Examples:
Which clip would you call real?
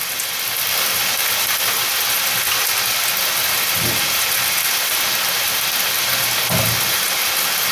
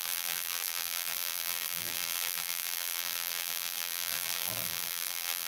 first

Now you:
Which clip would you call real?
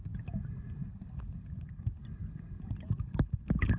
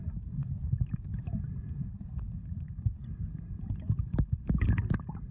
first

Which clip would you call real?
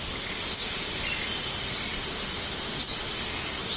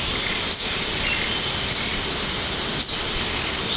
first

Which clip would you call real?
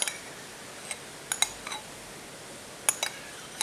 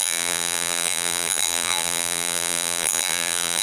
first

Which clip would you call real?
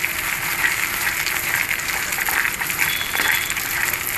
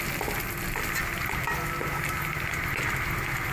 second